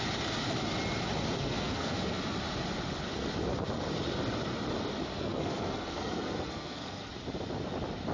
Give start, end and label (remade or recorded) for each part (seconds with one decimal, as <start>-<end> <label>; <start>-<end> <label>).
0.0-1.4 recorded; 1.4-2.2 remade; 2.2-5.1 recorded; 5.1-7.1 remade; 7.1-8.1 recorded